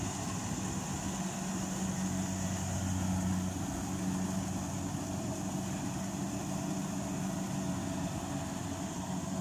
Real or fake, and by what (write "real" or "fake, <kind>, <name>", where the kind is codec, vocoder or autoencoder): real